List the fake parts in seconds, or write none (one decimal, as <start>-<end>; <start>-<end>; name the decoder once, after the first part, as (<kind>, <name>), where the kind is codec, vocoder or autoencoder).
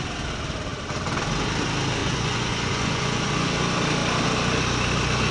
2.0-3.5 (vocoder, Vocos)